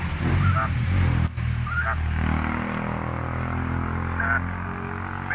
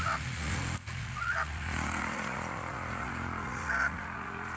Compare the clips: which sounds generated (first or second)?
second